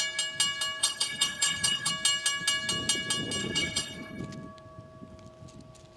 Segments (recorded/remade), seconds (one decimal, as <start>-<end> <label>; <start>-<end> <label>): 0.0-0.8 recorded; 0.8-1.9 remade; 1.9-3.4 recorded; 3.4-4.2 remade; 4.2-6.0 recorded